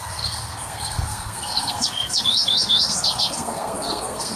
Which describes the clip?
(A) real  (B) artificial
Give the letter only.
B